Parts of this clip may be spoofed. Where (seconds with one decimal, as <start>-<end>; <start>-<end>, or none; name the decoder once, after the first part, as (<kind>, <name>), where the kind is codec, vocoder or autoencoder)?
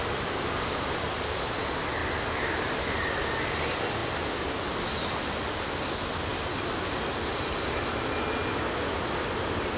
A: 0.0-1.1 (vocoder, BigVGAN v2); 2.0-2.8